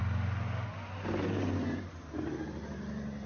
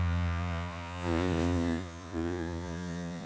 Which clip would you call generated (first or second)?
second